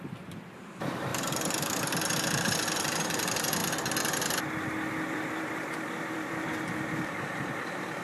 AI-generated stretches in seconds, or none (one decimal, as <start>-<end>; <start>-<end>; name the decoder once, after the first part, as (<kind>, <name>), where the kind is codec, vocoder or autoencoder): 0.0-3.6 (vocoder, BigVGAN v2); 5.1-8.0